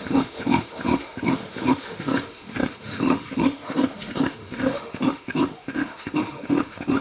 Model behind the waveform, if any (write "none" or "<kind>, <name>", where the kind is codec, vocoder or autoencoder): autoencoder, DAC-VAE